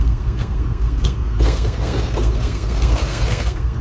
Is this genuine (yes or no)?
no